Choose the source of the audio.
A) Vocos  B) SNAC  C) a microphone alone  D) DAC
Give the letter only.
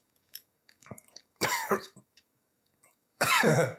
D